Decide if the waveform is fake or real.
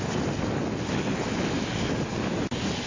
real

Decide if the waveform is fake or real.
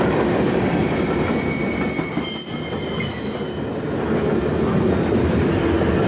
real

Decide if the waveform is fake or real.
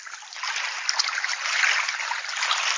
real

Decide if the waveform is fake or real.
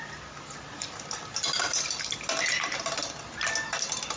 real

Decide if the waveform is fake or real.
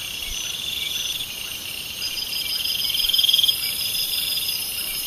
fake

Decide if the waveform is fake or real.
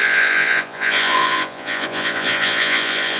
fake